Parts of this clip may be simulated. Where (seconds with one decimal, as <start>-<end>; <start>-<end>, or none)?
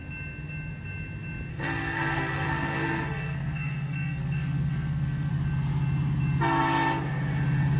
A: 1.5-5.3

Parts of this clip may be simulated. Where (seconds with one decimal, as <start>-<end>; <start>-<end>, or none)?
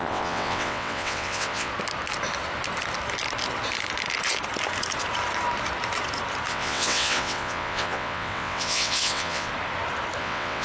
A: 0.0-1.7; 6.5-9.5; 10.2-10.6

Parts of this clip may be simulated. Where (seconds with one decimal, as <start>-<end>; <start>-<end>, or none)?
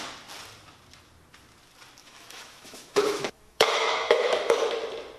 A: 2.0-4.7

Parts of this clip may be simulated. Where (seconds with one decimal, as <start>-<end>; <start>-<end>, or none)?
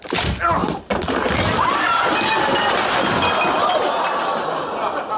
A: none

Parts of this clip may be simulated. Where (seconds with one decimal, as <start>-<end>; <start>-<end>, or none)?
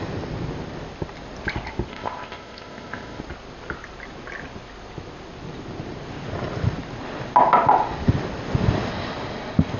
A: 1.9-3.2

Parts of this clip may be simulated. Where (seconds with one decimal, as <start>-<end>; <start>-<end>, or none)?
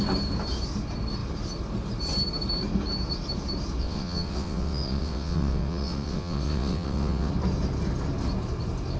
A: 3.8-7.3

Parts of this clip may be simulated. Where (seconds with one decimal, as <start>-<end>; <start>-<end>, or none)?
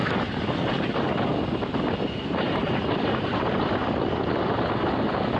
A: 0.0-1.3; 2.4-3.6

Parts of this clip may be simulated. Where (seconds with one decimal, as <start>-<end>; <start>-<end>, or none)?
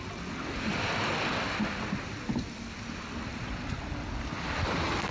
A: 0.7-2.9; 3.3-5.1